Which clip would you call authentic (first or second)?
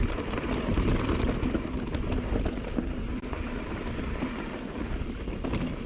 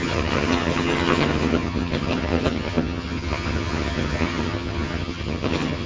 first